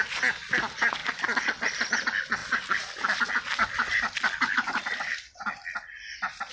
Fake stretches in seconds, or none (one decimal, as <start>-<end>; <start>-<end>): none